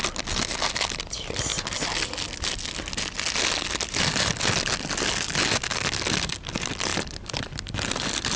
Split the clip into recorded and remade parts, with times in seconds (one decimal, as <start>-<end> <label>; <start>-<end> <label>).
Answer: 0.0-6.9 recorded; 6.9-8.4 remade